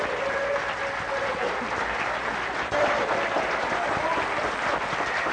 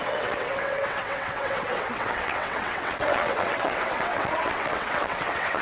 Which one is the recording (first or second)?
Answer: first